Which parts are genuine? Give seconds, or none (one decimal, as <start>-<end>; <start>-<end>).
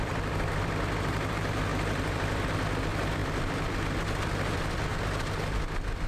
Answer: 4.9-6.1